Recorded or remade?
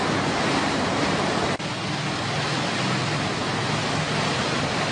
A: recorded